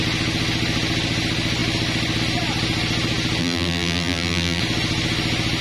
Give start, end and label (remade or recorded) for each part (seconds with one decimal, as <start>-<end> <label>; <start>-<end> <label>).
0.0-3.4 recorded; 3.4-4.6 remade; 4.6-5.6 recorded